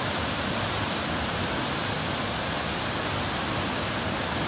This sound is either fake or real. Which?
real